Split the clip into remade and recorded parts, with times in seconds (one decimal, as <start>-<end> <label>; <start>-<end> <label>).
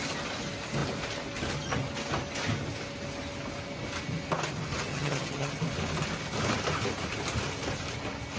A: 0.0-4.9 recorded; 4.9-5.5 remade; 5.5-8.4 recorded